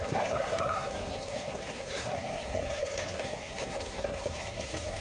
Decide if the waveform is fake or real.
fake